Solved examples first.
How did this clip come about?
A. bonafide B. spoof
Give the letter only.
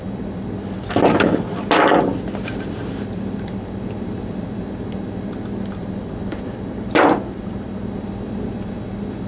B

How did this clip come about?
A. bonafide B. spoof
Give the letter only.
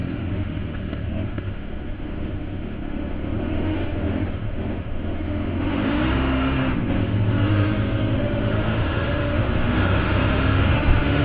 B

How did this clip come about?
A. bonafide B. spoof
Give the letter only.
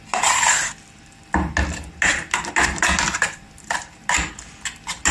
A